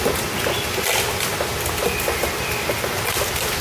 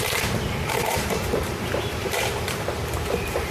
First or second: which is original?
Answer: first